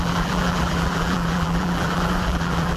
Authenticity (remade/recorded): remade